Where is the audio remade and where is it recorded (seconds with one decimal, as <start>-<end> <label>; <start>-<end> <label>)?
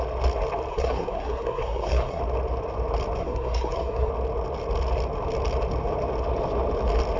0.0-0.7 recorded; 0.7-2.2 remade; 2.2-3.2 recorded; 3.2-4.1 remade; 4.1-7.2 recorded